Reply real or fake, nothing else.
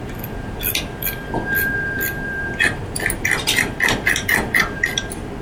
fake